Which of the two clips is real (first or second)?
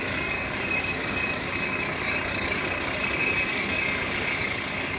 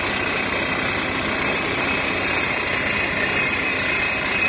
second